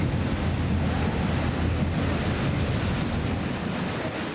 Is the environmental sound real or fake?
real